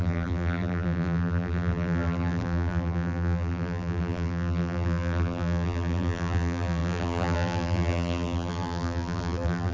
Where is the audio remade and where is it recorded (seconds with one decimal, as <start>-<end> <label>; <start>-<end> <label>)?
0.0-9.7 remade